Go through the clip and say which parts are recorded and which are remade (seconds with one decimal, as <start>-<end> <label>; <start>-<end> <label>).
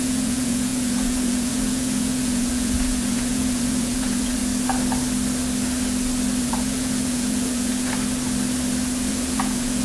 0.0-4.4 remade; 4.4-6.4 recorded; 6.4-7.7 remade; 7.7-9.1 recorded; 9.1-9.8 remade